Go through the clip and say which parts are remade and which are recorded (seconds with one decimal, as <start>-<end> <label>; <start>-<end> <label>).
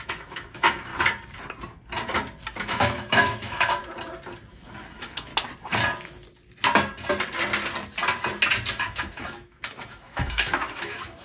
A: 0.0-0.9 remade; 0.9-2.6 recorded; 2.6-3.8 remade; 3.8-4.5 recorded; 4.5-5.3 remade; 5.3-8.8 recorded; 8.8-11.2 remade